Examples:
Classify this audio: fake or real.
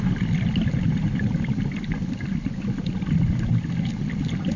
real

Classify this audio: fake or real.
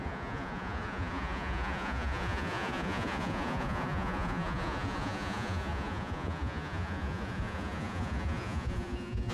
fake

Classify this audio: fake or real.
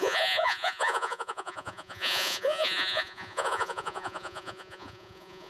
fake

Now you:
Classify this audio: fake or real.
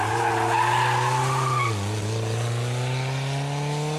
real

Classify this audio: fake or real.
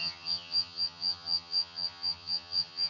fake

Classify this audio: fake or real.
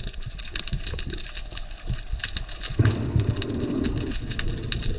real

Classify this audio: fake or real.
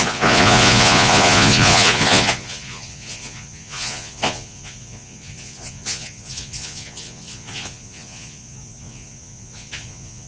fake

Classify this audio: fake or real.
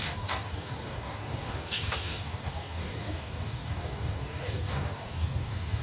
fake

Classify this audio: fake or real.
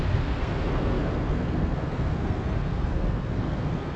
fake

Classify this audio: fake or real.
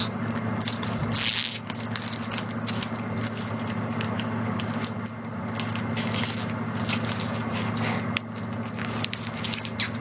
real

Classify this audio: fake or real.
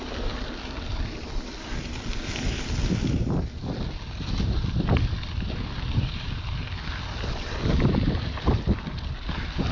real